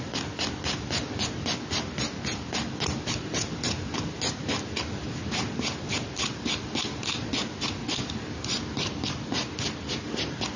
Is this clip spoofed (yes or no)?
no